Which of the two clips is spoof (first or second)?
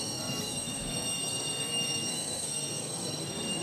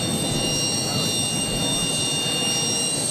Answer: first